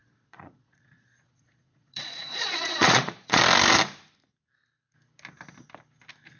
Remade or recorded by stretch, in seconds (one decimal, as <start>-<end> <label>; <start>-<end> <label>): 0.0-3.4 remade; 3.4-6.4 recorded